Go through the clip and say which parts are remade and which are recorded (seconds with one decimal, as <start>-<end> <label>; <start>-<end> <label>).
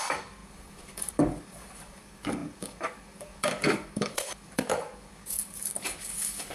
0.0-6.5 remade